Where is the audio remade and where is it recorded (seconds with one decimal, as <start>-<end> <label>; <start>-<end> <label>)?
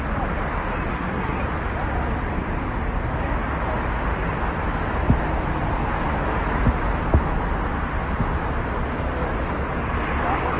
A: 0.0-0.9 recorded; 0.9-1.4 remade; 1.4-10.6 recorded